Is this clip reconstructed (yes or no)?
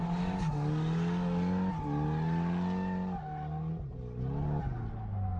no